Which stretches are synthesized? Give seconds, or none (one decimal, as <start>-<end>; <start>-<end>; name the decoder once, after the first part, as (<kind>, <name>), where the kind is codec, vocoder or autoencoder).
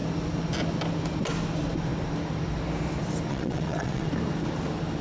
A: 3.3-4.1 (vocoder, WaveNeXt)